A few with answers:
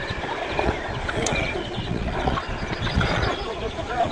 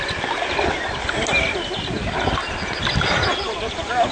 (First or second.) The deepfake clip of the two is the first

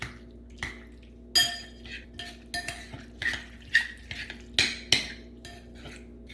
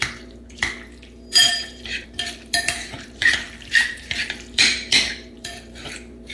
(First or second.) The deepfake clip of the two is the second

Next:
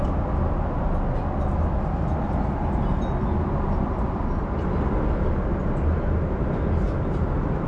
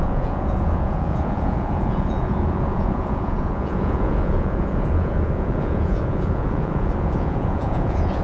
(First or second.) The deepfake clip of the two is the second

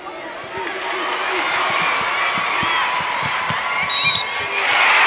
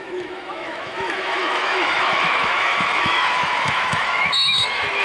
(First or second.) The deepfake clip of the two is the second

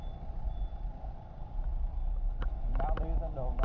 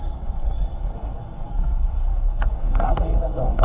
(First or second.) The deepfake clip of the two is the second